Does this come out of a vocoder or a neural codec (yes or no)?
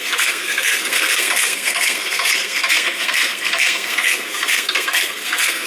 yes